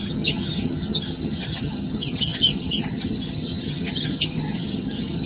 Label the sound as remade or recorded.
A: remade